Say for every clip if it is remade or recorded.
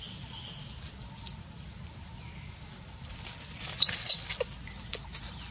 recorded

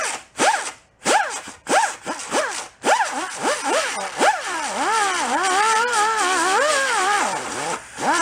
remade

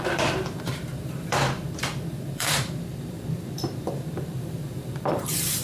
remade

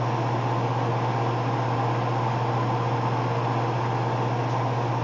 recorded